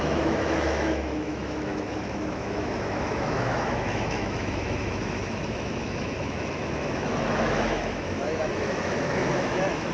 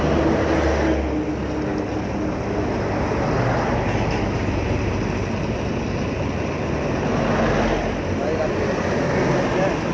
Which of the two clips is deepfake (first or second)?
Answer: first